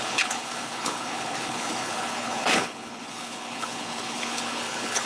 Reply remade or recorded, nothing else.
remade